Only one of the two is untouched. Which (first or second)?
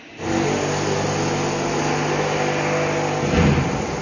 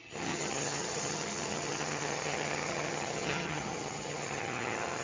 first